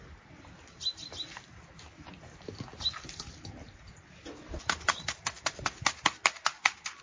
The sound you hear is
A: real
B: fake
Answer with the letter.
A